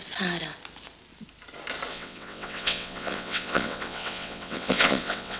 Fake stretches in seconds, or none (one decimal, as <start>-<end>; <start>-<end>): 1.9-5.4